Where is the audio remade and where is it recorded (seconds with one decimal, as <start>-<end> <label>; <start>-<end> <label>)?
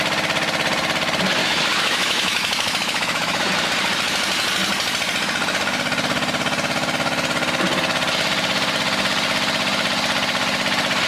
0.0-1.4 recorded; 1.4-3.5 remade; 3.5-11.1 recorded